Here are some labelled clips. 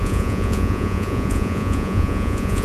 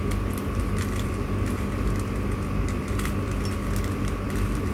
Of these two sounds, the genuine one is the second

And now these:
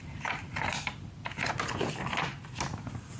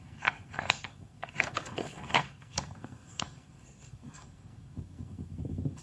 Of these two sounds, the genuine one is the first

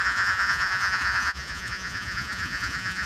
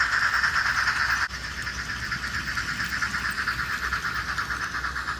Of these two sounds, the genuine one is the second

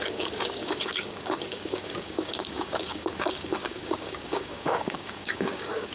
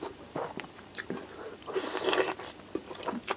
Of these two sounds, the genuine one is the second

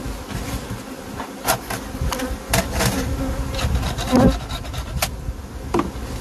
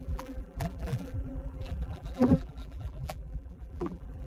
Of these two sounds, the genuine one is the first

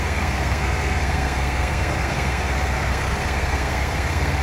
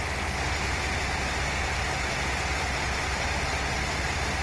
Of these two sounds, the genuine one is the second